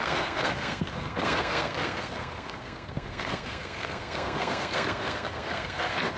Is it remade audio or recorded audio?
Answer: remade